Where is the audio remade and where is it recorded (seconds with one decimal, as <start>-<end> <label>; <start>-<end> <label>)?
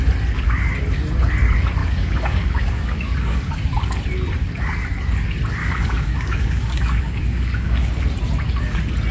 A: 0.0-1.8 recorded; 1.8-3.5 remade; 3.5-5.6 recorded; 5.6-7.9 remade; 7.9-9.1 recorded